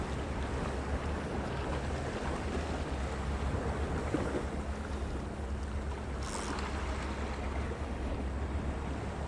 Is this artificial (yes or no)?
no